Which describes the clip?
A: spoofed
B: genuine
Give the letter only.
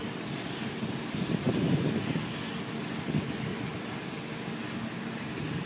B